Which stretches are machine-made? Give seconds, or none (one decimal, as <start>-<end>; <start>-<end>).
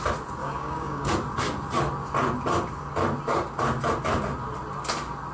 0.4-1.1